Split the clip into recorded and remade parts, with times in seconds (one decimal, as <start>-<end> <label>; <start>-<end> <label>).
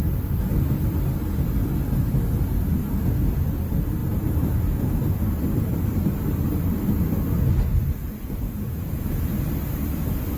0.0-2.8 recorded; 2.8-3.5 remade; 3.5-8.0 recorded; 8.0-9.3 remade; 9.3-10.4 recorded